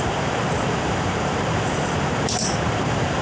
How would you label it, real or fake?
fake